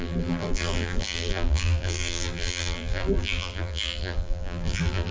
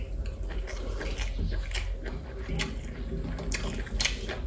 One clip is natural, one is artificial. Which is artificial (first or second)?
first